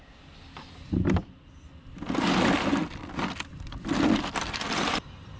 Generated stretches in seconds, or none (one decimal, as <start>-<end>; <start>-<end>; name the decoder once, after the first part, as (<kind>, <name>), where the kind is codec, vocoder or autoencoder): 0.0-2.8 (vocoder, BigVGAN v2); 3.5-5.4